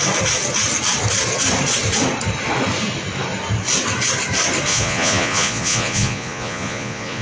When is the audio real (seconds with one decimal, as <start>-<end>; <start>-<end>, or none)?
0.0-4.7